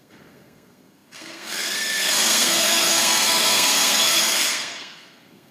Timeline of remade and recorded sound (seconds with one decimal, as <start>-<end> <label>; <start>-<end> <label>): 0.0-5.5 remade